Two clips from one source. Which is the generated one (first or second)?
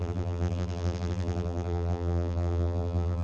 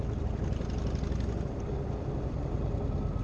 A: first